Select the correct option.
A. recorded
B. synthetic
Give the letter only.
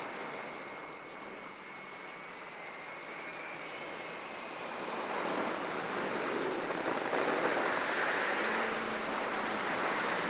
A